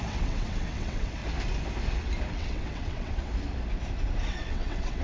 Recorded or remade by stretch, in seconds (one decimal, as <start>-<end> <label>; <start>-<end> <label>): 0.0-1.2 remade; 1.2-2.3 recorded; 2.3-3.3 remade; 3.3-4.2 recorded; 4.2-5.0 remade